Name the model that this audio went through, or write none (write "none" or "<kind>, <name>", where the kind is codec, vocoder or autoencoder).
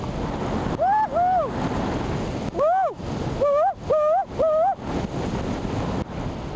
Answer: none